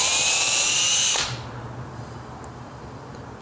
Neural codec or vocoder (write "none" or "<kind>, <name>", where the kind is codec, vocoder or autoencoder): none